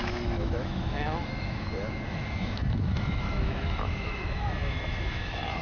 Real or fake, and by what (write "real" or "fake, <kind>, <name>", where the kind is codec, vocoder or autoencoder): fake, autoencoder, DAC-VAE